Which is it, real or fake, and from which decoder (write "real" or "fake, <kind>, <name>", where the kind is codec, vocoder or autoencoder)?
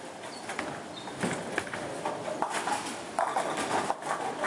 real